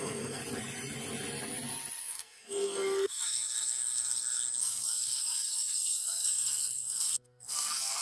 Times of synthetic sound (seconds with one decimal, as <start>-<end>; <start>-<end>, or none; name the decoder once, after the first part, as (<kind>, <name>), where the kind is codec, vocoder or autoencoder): 0.0-0.4 (codec, SNAC); 2.0-8.0